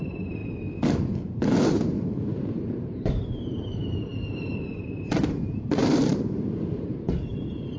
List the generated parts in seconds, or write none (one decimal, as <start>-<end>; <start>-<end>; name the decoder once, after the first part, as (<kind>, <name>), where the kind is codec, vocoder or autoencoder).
0.0-0.4 (vocoder, BigVGAN v2); 1.7-4.1; 4.7-7.8